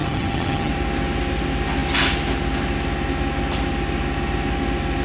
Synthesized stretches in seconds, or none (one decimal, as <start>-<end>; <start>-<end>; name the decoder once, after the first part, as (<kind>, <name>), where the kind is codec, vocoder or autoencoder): 0.0-0.7 (vocoder, HiFi-GAN)